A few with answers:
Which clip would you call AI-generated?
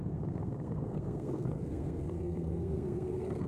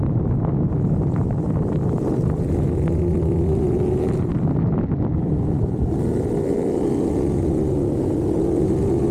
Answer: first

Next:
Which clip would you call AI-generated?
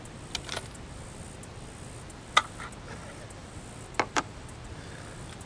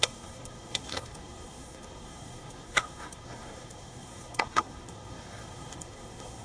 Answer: second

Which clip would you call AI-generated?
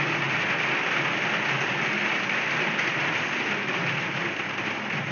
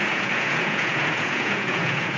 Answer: second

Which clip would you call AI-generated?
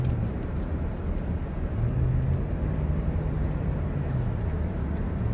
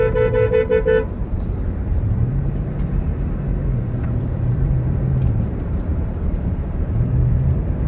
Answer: second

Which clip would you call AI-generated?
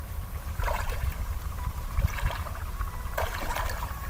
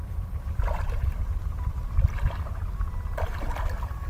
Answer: first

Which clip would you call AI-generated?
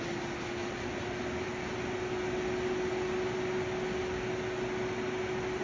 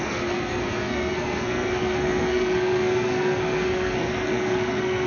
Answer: second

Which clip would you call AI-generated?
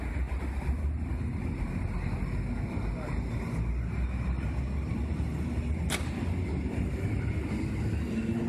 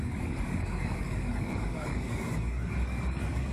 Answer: second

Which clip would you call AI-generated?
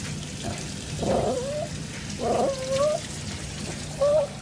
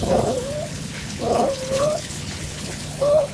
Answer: second